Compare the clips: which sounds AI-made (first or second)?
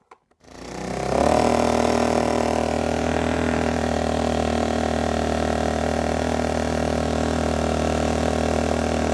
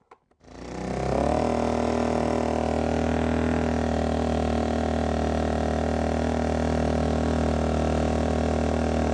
first